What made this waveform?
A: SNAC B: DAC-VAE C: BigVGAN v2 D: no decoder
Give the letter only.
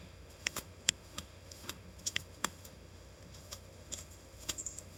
B